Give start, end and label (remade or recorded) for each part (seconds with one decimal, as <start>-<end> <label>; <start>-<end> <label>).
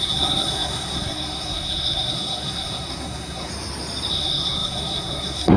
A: 0.0-3.5 remade; 3.5-4.1 recorded; 4.1-5.6 remade